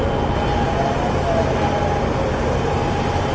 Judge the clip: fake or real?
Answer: real